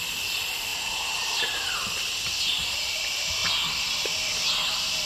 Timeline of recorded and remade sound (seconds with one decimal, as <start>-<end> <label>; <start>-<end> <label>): 0.0-3.4 remade; 3.4-4.1 recorded; 4.1-5.1 remade